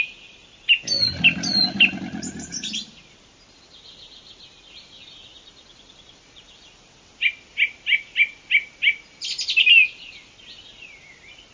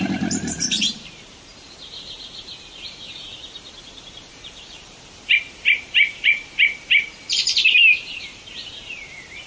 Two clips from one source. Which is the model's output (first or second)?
second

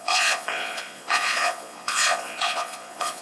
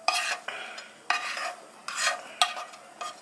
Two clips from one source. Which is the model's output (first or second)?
first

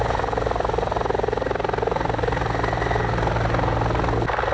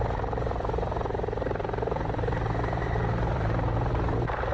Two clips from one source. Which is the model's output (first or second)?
second